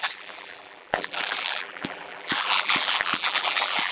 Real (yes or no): no